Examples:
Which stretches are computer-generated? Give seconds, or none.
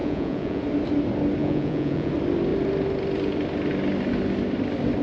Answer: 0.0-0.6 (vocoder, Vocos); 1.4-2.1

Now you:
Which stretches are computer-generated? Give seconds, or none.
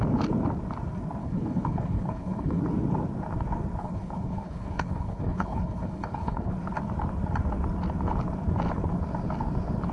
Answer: 1.2-2.6 (codec, HILCodec); 3.8-6.5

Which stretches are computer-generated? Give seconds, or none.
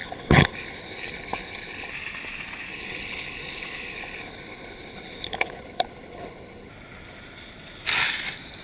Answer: 0.0-1.9 (codec, HILCodec); 2.7-6.7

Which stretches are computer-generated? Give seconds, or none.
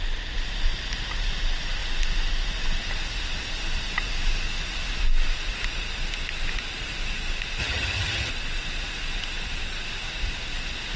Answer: 7.6-8.3 (vocoder, HiFi-GAN)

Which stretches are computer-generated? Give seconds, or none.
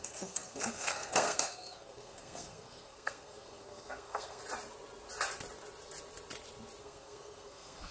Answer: 0.0-4.4 (codec, SNAC); 6.8-7.9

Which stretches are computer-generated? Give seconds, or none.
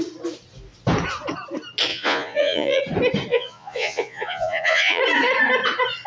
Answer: 1.9-2.8 (vocoder, Vocos); 3.3-5.0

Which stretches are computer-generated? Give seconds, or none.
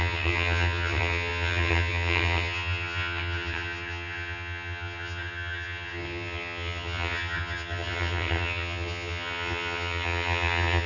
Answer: 0.0-10.9 (vocoder, HiFi-GAN)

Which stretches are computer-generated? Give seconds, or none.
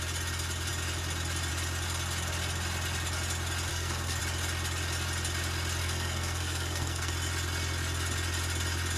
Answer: 3.7-4.2 (codec, SNAC); 5.8-7.1